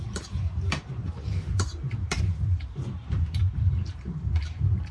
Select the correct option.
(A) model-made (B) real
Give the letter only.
A